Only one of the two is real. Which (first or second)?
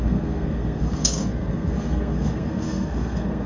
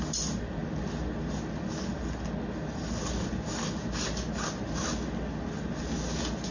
second